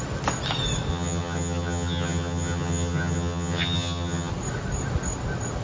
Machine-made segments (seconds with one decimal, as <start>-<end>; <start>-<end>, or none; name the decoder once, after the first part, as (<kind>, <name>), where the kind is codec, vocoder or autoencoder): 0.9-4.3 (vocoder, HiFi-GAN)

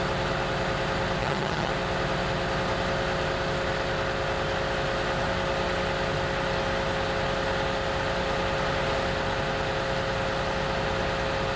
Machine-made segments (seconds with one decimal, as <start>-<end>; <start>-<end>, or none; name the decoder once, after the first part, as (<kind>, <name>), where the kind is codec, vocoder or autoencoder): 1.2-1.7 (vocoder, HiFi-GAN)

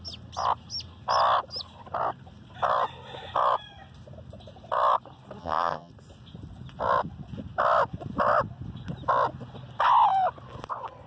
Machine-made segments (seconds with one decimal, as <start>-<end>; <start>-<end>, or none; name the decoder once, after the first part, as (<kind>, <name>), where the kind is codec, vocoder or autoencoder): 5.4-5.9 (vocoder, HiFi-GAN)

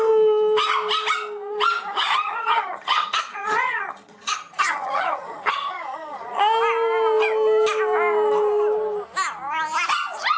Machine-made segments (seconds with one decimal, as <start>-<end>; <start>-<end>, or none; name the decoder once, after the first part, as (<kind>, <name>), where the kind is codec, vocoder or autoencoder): 2.1-6.4 (vocoder, HiFi-GAN)

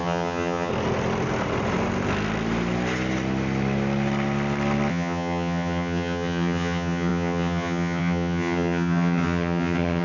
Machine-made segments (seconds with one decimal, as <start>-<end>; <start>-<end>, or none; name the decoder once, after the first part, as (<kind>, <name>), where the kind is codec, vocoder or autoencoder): 0.0-0.7 (vocoder, HiFi-GAN); 4.9-10.0

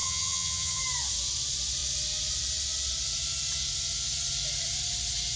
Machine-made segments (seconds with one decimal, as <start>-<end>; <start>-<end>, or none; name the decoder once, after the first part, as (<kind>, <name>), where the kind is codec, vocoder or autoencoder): 0.0-0.8 (vocoder, HiFi-GAN)

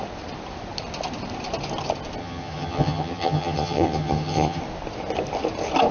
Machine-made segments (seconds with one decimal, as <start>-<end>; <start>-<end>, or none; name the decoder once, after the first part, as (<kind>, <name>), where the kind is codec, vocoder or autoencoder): 2.2-4.6 (vocoder, HiFi-GAN)

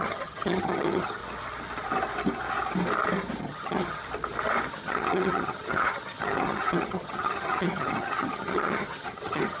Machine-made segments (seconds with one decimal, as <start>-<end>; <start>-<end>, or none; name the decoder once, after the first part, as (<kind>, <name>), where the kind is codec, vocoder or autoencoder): 0.0-1.2 (vocoder, HiFi-GAN); 3.4-4.0; 4.7-9.6